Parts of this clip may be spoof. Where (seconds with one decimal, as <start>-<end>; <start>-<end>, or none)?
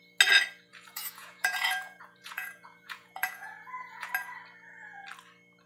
0.7-4.1